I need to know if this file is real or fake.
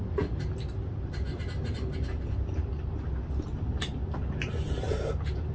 real